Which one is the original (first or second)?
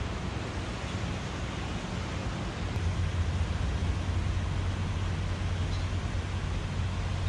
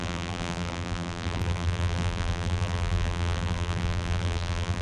first